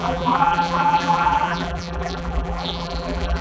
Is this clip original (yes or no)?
no